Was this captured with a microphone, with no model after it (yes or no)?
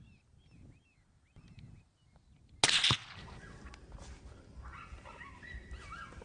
yes